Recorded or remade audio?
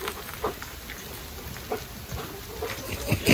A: recorded